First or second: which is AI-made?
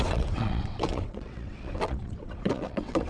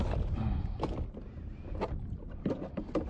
first